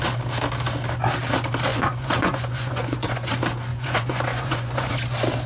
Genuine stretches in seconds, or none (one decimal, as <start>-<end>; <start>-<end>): 0.0-1.7; 3.3-3.7; 4.9-5.5